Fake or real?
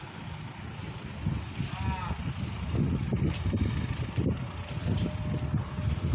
real